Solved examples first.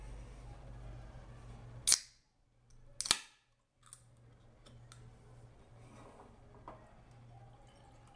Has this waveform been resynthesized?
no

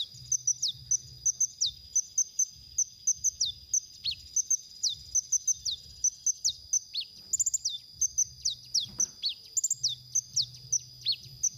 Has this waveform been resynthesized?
no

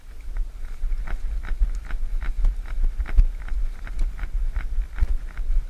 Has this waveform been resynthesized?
no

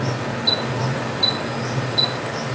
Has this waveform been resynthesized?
no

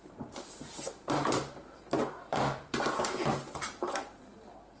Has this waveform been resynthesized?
yes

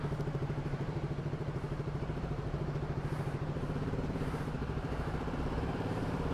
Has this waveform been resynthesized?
yes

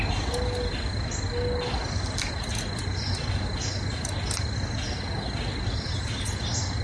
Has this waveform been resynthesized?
no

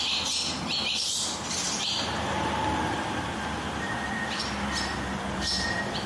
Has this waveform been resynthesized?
yes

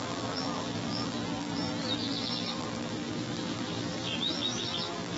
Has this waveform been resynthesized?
yes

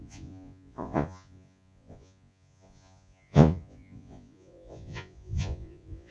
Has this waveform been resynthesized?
yes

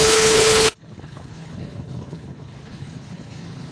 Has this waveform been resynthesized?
yes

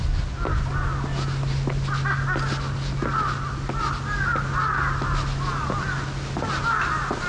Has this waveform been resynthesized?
no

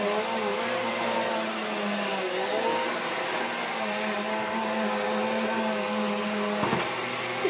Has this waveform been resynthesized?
no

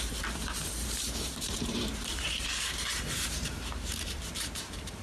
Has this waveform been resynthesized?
yes